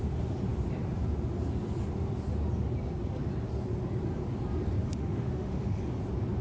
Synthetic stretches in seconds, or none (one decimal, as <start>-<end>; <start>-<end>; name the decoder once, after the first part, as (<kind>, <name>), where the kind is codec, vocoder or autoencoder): 4.8-5.8 (autoencoder, DAC-VAE)